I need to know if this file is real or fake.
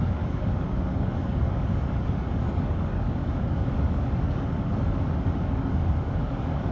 fake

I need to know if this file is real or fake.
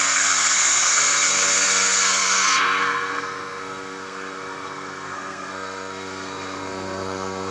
fake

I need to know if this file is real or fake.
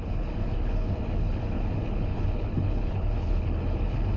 fake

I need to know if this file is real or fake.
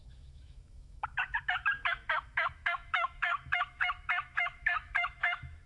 fake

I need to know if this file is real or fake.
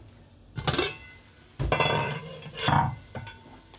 real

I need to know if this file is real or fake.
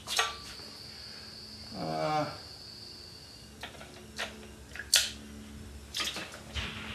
real